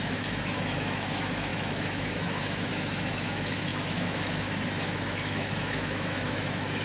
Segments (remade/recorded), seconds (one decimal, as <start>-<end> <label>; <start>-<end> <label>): 0.0-6.8 remade

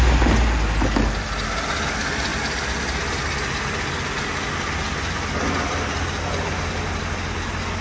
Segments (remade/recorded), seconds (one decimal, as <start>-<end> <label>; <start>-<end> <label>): 0.0-7.8 recorded

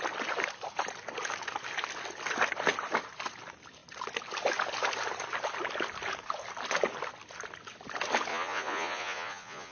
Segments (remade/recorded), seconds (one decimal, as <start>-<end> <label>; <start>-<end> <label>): 0.0-8.3 recorded; 8.3-9.7 remade

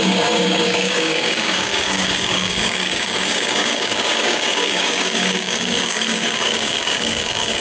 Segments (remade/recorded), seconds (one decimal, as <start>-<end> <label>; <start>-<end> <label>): 0.0-7.6 remade

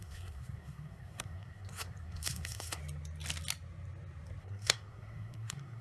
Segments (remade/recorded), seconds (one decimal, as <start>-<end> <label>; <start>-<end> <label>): 0.0-2.8 remade; 2.8-4.4 recorded; 4.4-5.8 remade

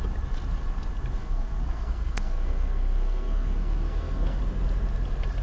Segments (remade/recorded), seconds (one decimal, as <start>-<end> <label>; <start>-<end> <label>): 0.0-1.2 recorded; 1.2-4.4 remade; 4.4-5.4 recorded